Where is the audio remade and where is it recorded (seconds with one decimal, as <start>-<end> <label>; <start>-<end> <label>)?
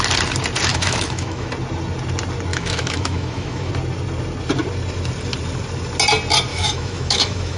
0.0-0.7 recorded; 0.7-1.5 remade; 1.5-2.5 recorded; 2.5-3.7 remade; 3.7-6.5 recorded; 6.5-7.6 remade